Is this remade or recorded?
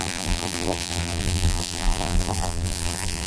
remade